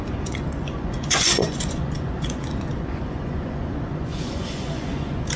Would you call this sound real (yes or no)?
no